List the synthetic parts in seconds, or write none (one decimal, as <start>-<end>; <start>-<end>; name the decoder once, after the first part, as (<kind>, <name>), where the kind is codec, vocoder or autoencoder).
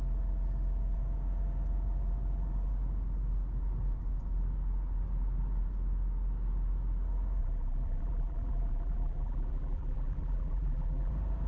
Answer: 7.4-11.1 (vocoder, BigVGAN v2)